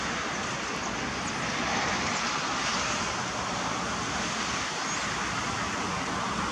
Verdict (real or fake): real